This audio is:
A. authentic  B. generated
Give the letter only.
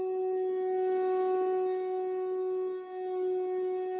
A